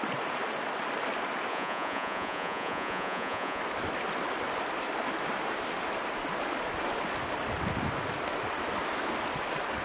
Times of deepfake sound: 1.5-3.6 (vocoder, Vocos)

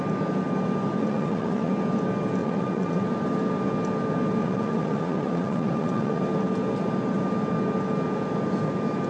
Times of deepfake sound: 1.0-1.7 (vocoder, Vocos); 2.4-3.0; 4.4-6.2

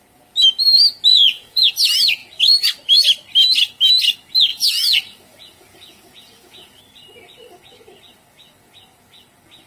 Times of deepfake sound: 1.1-1.7 (vocoder, Vocos); 4.5-6.8